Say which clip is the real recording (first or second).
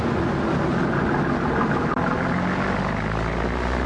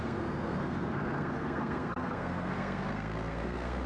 first